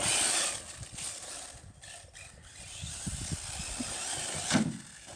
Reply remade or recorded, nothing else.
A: recorded